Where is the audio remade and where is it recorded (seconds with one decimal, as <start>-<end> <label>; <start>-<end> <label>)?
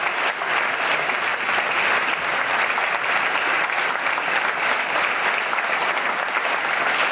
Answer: 0.0-7.1 recorded